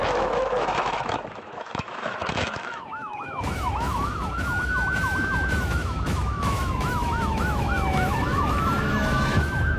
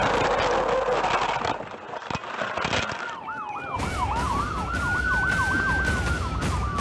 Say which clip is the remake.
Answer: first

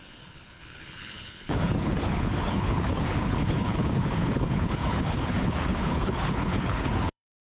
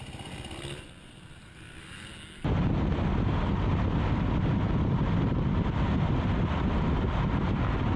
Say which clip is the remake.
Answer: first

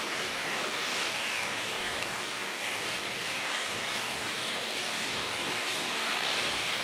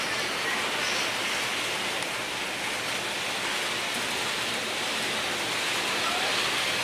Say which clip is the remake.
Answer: first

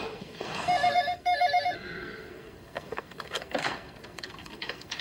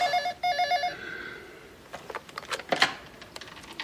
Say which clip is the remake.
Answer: first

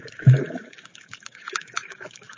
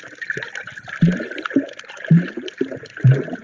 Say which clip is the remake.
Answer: first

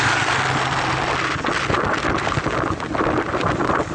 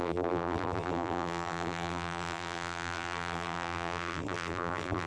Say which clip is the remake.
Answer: second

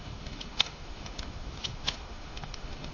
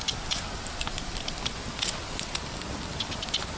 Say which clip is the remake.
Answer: first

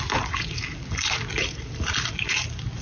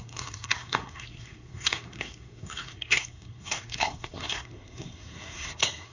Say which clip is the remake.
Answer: second